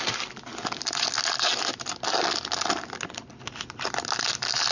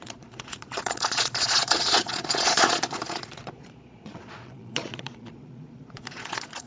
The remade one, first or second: second